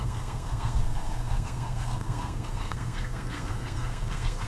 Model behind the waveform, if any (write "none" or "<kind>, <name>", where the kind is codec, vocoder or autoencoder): codec, SNAC